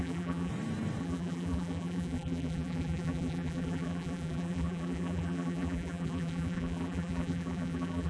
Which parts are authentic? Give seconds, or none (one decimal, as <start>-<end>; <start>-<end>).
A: 0.5-1.0